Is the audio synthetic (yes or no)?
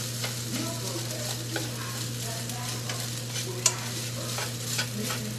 no